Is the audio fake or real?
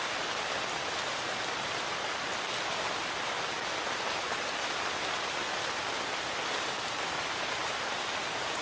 real